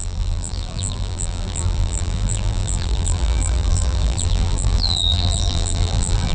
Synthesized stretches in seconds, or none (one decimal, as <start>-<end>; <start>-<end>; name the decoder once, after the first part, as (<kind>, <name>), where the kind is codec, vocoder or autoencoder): 0.0-6.3 (vocoder, BigVGAN v2)